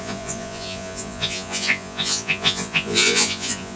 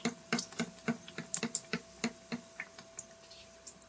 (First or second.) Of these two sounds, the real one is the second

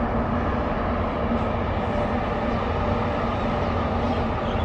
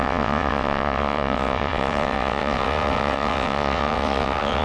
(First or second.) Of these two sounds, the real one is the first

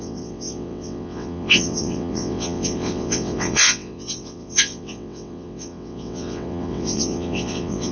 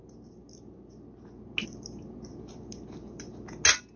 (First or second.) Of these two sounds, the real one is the second